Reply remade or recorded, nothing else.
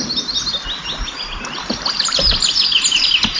recorded